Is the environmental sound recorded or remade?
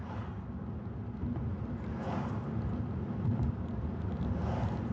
recorded